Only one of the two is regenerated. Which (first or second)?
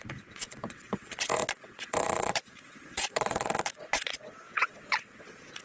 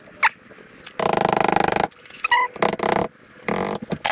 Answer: first